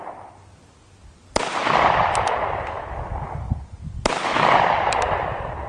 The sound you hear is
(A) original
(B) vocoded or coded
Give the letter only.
A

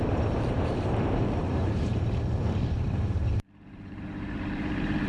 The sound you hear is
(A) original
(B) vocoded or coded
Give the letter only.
B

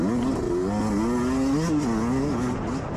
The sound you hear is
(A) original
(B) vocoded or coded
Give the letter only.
A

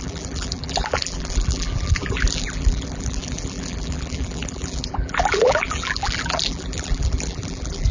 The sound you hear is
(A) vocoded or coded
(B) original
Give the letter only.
A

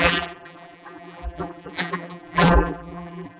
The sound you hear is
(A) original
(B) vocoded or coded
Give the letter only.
B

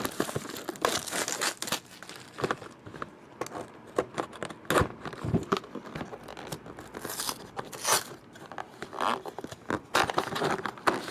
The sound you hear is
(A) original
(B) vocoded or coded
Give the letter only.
A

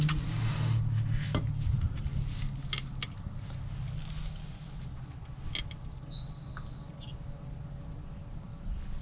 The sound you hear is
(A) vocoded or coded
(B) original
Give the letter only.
B